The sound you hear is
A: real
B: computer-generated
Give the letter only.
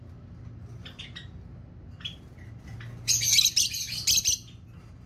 A